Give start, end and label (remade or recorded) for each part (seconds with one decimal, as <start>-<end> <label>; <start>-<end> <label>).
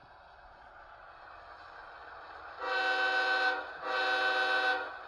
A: 0.0-5.1 recorded